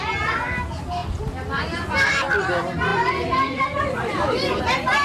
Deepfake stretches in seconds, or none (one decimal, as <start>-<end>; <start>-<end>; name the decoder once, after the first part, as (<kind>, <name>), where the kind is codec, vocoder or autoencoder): 2.9-4.6 (vocoder, BigVGAN v2)